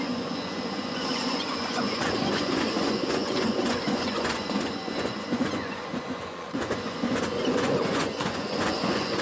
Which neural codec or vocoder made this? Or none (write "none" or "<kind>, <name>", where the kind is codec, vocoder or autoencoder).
vocoder, Vocos